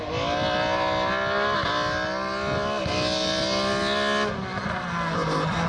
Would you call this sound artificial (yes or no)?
no